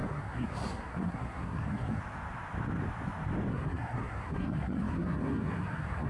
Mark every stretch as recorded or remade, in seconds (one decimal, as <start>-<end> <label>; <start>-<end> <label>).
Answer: 0.0-2.0 remade; 2.0-3.5 recorded; 3.5-6.1 remade